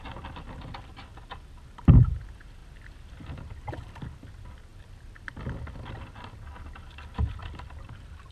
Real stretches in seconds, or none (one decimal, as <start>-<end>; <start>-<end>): 0.0-7.4